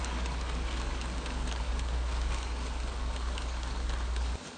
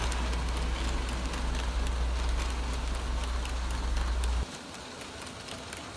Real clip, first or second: second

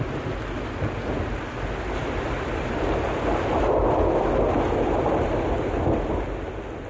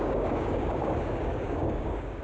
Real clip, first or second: first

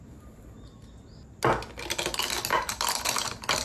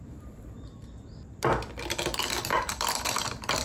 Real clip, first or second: first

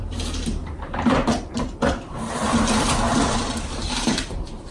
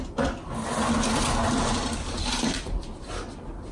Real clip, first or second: second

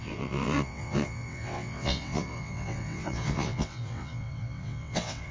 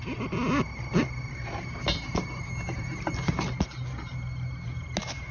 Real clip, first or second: second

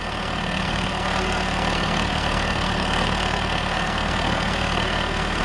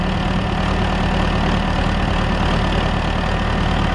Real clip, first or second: second